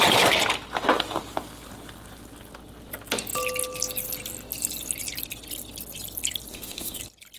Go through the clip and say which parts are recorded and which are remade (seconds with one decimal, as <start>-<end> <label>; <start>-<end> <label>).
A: 0.0-6.5 recorded; 6.5-7.0 remade; 7.0-7.4 recorded